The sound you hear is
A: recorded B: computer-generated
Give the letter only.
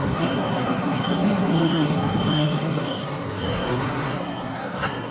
B